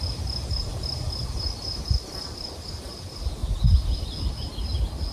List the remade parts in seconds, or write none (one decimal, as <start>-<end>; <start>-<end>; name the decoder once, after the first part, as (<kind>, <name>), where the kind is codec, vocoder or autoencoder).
none